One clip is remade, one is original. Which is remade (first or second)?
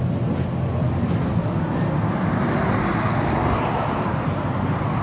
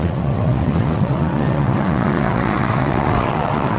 second